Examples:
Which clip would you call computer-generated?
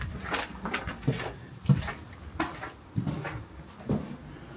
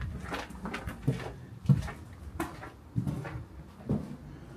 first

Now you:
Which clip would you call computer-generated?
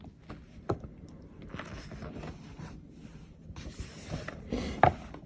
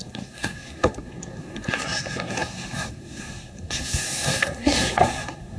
second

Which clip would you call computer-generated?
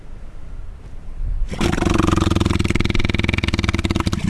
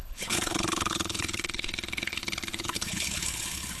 second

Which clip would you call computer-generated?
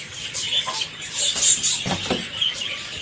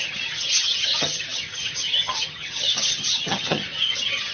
second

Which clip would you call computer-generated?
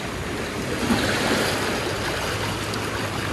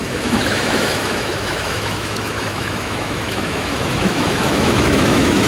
second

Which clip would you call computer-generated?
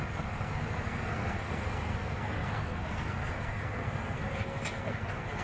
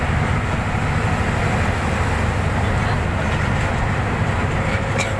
first